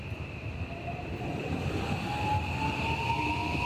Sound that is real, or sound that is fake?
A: real